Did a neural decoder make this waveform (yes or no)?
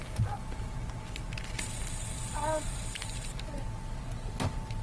no